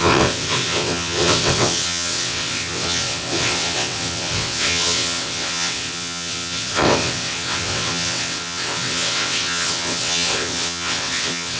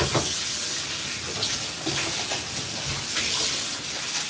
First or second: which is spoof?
first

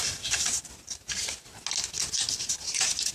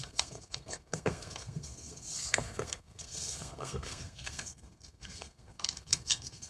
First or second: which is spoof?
second